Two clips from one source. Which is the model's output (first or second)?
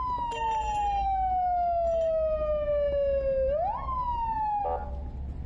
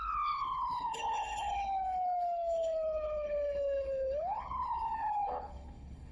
second